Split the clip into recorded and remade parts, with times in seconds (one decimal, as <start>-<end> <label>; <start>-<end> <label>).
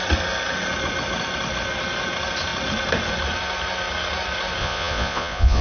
0.0-4.6 recorded; 4.6-5.6 remade